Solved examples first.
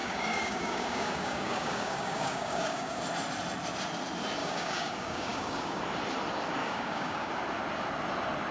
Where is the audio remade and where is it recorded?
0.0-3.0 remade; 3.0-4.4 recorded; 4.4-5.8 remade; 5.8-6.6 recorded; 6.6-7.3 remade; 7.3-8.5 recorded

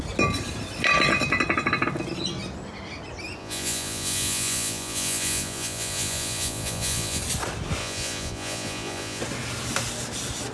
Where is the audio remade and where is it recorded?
0.0-3.4 recorded; 3.4-7.2 remade; 7.2-7.8 recorded; 7.8-9.2 remade; 9.2-10.5 recorded

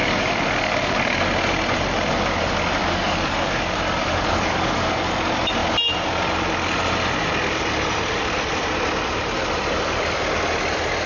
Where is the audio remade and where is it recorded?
0.0-1.3 remade; 1.3-2.8 recorded; 2.8-4.9 remade; 4.9-11.1 recorded

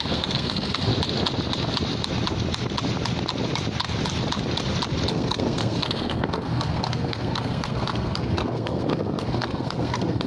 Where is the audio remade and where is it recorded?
0.0-0.9 remade; 0.9-5.1 recorded; 5.1-10.3 remade

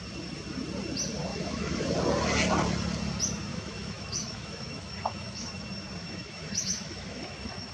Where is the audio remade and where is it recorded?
0.0-1.3 recorded; 1.3-1.8 remade; 1.8-3.5 recorded; 3.5-5.5 remade; 5.5-6.0 recorded; 6.0-7.7 remade